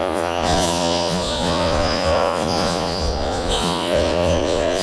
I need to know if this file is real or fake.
fake